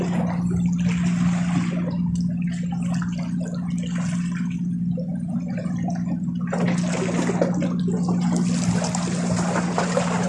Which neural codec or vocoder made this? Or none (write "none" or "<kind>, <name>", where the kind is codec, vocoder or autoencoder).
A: none